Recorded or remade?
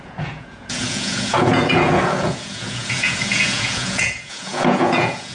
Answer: remade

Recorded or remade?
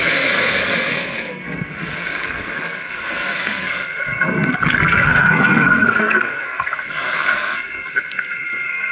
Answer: remade